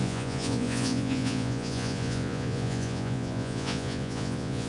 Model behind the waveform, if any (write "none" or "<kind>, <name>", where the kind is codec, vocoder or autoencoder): vocoder, Vocos